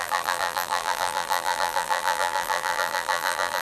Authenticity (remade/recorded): remade